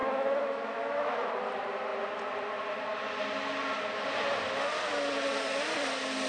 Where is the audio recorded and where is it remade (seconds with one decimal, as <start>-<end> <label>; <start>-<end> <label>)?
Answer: 0.0-1.3 remade; 1.3-6.3 recorded